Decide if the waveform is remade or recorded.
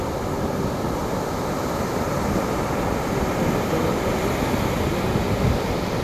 recorded